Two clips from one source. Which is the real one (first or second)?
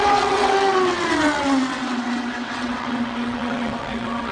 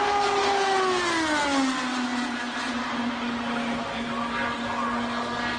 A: second